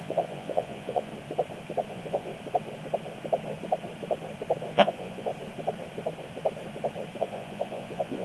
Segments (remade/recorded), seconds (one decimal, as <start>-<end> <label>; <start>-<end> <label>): 0.0-1.1 remade; 1.1-1.9 recorded; 1.9-2.3 remade; 2.3-4.7 recorded; 4.7-5.3 remade; 5.3-7.2 recorded; 7.2-8.2 remade